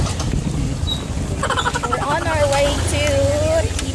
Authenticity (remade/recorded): recorded